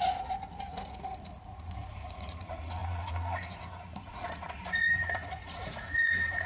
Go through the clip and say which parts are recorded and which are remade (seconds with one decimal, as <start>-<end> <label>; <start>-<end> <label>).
0.0-6.5 remade